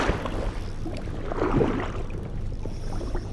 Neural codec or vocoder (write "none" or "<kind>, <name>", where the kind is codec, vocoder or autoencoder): none